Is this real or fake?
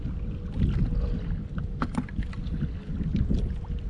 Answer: real